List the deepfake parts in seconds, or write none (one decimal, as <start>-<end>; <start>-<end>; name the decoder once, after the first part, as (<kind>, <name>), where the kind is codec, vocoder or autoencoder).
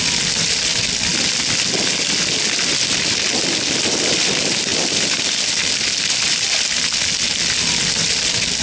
none